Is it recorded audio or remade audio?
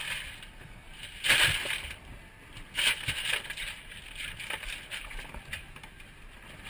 recorded